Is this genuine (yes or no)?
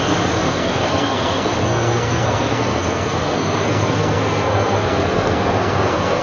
no